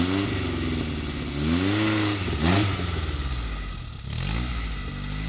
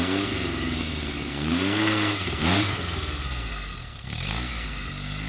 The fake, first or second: second